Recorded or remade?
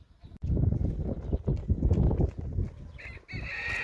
recorded